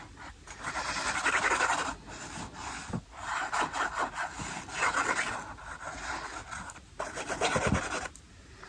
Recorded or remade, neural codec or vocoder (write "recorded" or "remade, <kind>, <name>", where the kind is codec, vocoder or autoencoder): recorded